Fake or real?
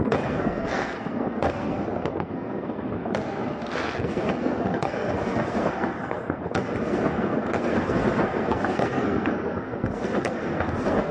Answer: fake